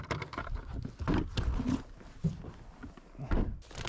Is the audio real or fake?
real